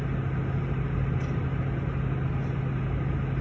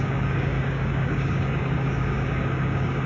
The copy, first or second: second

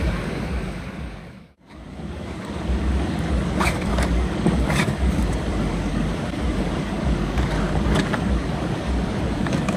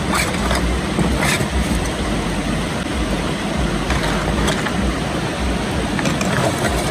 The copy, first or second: first